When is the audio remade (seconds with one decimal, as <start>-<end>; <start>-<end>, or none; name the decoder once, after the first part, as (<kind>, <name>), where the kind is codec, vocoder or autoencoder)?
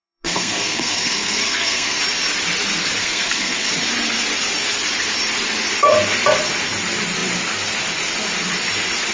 0.0-2.0 (codec, SNAC); 3.0-3.7